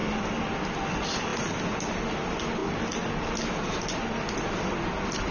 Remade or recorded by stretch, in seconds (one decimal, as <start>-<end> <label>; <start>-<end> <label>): 0.0-5.3 recorded